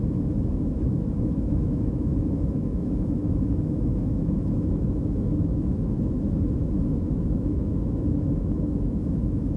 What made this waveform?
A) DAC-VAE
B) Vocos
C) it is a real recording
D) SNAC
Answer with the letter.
A